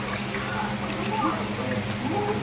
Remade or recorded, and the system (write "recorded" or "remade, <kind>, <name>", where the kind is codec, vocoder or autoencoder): recorded